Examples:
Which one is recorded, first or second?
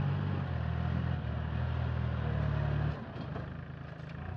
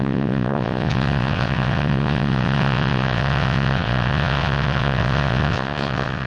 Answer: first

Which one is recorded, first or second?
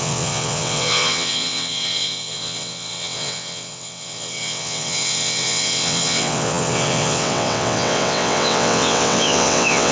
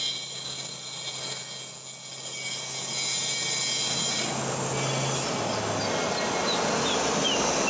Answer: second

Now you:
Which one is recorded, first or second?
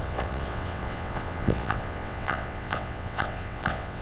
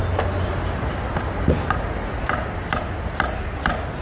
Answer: second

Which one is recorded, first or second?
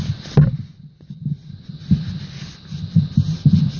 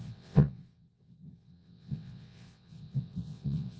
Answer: first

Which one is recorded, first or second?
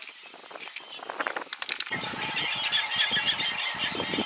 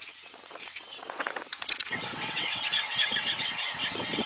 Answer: first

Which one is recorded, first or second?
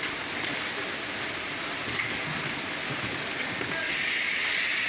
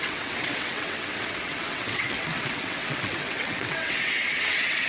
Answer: first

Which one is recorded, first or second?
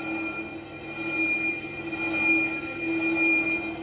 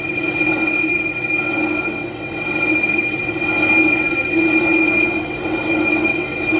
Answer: first